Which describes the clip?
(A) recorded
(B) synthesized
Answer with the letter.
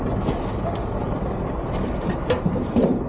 A